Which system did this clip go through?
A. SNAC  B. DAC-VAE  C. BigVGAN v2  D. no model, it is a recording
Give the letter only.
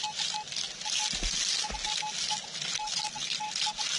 D